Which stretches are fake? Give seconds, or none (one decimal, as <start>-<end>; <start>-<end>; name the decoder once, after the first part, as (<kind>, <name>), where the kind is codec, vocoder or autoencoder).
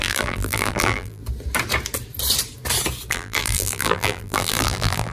0.0-1.2 (vocoder, BigVGAN v2); 3.1-5.1